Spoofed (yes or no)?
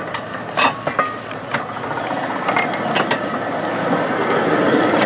no